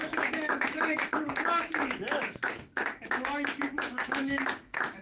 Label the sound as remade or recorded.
remade